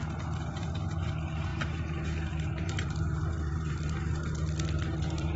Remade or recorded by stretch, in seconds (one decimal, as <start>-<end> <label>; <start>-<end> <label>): 0.0-4.2 remade; 4.2-5.0 recorded; 5.0-5.4 remade